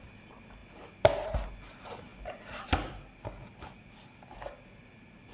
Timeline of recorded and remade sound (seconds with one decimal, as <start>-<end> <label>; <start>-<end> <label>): 0.0-0.6 recorded; 0.6-1.5 remade; 1.5-5.3 recorded